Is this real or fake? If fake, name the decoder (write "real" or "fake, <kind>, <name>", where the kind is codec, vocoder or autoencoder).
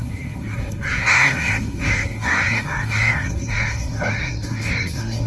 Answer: fake, codec, SNAC